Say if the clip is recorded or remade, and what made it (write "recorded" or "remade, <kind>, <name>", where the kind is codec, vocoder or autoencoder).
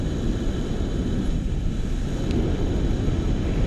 recorded